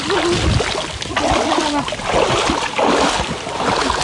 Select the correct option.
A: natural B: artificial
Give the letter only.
A